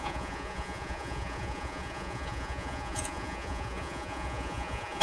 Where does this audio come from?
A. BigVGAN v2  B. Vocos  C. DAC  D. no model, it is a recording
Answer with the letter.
B